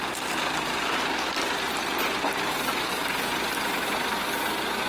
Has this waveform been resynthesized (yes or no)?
no